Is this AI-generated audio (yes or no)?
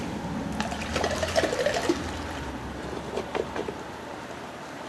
no